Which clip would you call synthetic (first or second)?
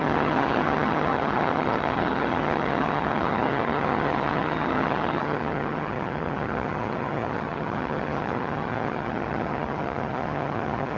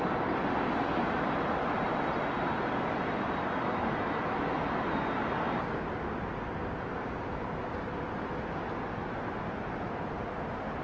first